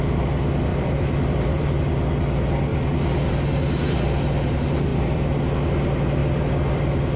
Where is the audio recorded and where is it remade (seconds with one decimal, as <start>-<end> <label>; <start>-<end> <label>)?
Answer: 0.0-0.7 recorded; 0.7-1.8 remade; 1.8-4.9 recorded; 4.9-5.4 remade; 5.4-6.2 recorded; 6.2-6.8 remade; 6.8-7.2 recorded